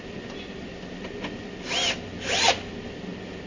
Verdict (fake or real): real